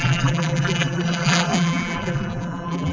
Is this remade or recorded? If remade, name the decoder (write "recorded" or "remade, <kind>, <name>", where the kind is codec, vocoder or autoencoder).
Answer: remade, vocoder, BigVGAN v2